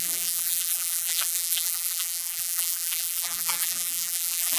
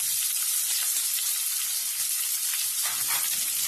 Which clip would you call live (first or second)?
second